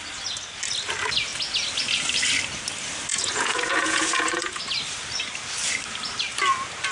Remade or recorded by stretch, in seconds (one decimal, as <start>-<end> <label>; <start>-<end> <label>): 0.0-3.1 recorded; 3.1-4.6 remade; 4.6-6.9 recorded

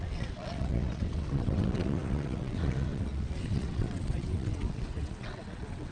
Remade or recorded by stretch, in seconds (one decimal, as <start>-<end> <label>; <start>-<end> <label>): 0.0-5.9 remade

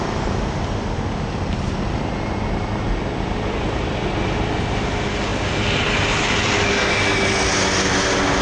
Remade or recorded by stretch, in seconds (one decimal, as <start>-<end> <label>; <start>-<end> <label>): 0.0-8.4 recorded

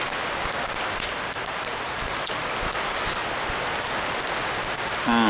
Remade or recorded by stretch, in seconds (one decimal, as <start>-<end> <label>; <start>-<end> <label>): 0.0-5.3 recorded

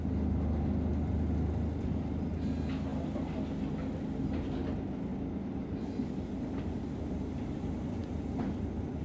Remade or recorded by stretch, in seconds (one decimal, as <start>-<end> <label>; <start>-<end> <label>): 0.0-2.9 recorded; 2.9-3.4 remade; 3.4-9.0 recorded

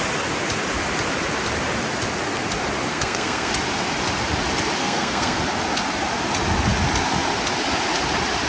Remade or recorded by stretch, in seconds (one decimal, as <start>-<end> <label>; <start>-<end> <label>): 0.0-2.9 recorded; 2.9-3.5 remade; 3.5-4.8 recorded; 4.8-5.4 remade; 5.4-8.5 recorded

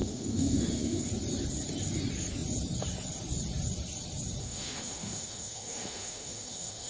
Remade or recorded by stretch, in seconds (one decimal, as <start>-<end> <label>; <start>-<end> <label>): 0.0-1.1 remade; 1.1-4.4 recorded; 4.4-6.9 remade